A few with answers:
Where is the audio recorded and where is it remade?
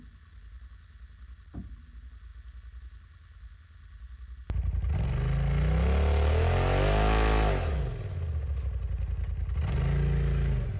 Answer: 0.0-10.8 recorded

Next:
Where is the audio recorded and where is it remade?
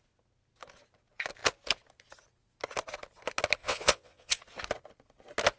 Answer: 0.0-3.6 recorded; 3.6-4.4 remade; 4.4-5.6 recorded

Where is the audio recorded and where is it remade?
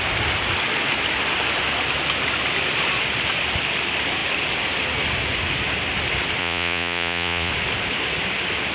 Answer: 0.0-6.4 recorded; 6.4-7.5 remade; 7.5-8.7 recorded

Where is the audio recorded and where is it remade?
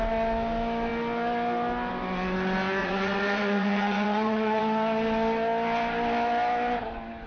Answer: 0.0-2.8 recorded; 2.8-4.6 remade; 4.6-7.3 recorded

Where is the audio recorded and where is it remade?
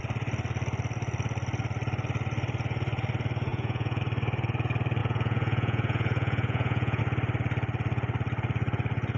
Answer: 0.0-3.5 recorded; 3.5-4.0 remade; 4.0-5.0 recorded; 5.0-7.0 remade; 7.0-9.2 recorded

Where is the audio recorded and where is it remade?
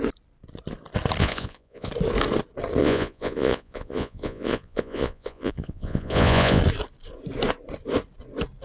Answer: 0.0-1.2 recorded; 1.2-1.9 remade; 1.9-2.8 recorded; 2.8-6.6 remade; 6.6-8.6 recorded